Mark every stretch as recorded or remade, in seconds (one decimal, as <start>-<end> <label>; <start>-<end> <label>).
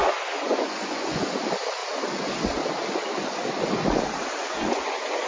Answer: 0.0-1.3 remade; 1.3-4.4 recorded; 4.4-5.3 remade